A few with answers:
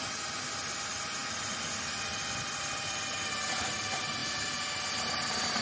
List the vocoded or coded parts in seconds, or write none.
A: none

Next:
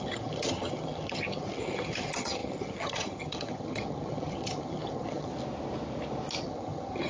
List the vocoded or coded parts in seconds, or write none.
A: 0.0-5.3; 6.4-7.1